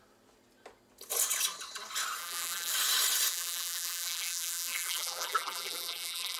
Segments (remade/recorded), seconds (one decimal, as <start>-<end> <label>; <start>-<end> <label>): 0.0-2.2 recorded; 2.2-2.7 remade; 2.7-3.3 recorded; 3.3-6.4 remade